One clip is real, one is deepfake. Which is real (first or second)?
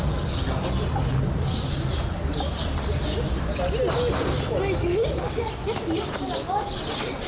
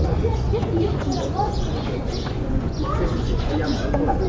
first